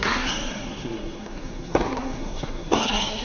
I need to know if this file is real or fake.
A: fake